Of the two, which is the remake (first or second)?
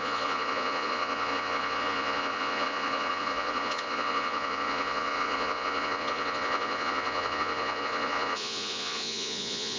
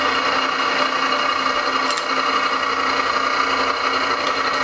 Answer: first